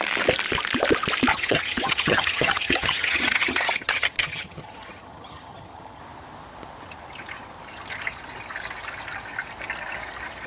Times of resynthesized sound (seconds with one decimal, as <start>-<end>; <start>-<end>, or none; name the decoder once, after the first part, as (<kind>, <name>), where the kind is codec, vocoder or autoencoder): 1.3-6.0 (vocoder, HiFi-GAN)